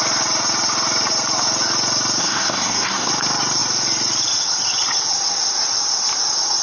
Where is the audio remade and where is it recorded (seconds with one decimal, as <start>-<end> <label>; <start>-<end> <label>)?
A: 0.0-2.2 recorded; 2.2-3.1 remade; 3.1-6.6 recorded